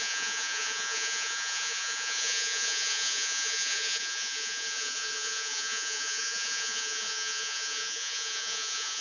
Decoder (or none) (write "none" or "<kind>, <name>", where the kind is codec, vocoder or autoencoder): vocoder, Vocos